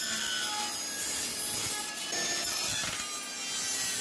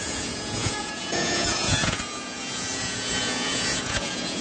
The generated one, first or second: second